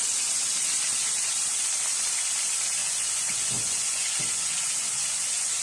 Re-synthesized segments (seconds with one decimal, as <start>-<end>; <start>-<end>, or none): 2.8-5.6